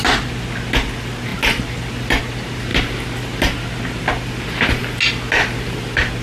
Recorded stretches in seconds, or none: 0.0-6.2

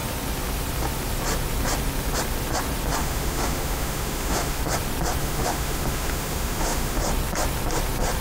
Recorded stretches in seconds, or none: 0.0-3.0; 4.6-5.2; 7.0-8.2